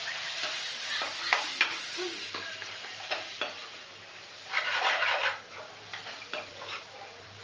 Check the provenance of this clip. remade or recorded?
remade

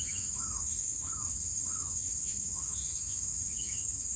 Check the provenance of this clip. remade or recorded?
remade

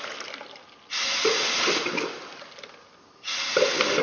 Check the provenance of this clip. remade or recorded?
recorded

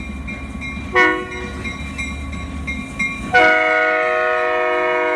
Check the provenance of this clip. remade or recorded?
recorded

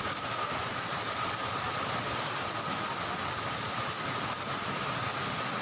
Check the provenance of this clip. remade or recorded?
recorded